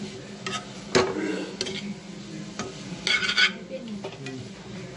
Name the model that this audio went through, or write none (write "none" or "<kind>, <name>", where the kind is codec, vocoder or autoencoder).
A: none